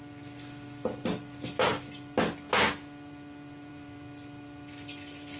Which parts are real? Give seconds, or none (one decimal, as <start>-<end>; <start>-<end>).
1.7-3.7